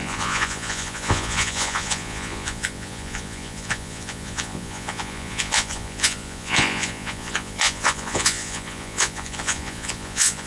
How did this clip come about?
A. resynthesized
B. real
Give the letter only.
A